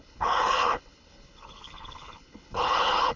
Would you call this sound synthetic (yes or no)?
yes